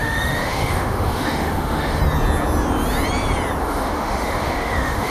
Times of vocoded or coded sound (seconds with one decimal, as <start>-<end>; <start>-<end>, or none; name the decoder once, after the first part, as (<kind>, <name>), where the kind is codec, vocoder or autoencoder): 0.0-2.0 (autoencoder, DAC-VAE); 3.6-5.1